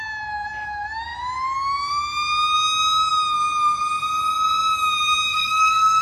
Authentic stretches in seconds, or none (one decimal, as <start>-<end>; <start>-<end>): 0.0-5.3